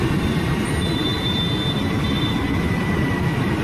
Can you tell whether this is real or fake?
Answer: real